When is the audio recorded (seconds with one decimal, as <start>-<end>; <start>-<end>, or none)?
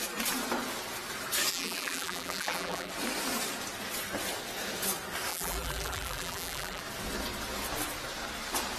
0.0-1.5; 2.9-5.3; 6.8-8.8